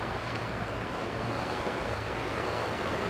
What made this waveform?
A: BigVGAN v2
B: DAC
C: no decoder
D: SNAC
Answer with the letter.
D